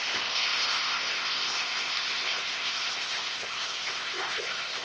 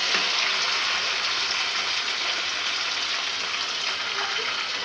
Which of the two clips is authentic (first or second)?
second